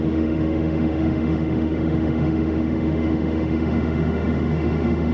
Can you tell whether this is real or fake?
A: fake